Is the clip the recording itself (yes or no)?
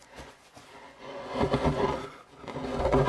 no